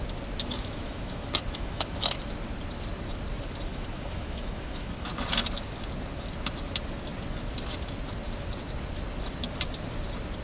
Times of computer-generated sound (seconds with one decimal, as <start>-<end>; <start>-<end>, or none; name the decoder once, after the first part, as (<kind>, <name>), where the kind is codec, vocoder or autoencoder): 0.4-2.2 (autoencoder, DAC-VAE); 3.7-5.1